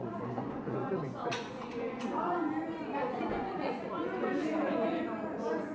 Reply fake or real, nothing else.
fake